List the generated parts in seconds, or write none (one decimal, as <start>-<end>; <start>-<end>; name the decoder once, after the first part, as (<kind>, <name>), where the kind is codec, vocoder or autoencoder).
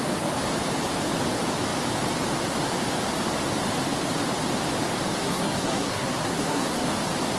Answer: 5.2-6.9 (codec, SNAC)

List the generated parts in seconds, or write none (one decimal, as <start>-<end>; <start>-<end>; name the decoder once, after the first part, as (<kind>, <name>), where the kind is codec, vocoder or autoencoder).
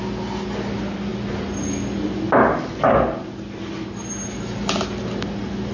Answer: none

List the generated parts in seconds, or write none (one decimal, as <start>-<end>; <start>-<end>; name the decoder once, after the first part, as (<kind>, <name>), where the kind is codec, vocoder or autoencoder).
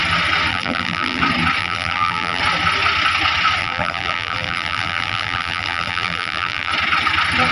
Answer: 0.5-1.2 (vocoder, BigVGAN v2); 1.6-2.4; 3.6-6.7